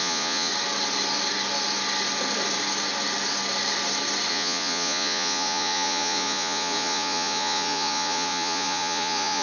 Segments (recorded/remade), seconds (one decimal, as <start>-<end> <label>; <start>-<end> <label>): 0.0-0.5 remade; 0.5-4.3 recorded; 4.3-9.4 remade